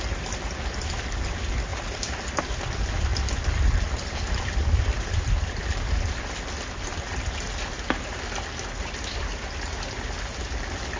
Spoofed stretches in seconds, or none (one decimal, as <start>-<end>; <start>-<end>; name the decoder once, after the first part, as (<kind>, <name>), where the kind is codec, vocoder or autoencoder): none